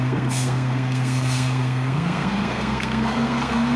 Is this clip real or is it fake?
fake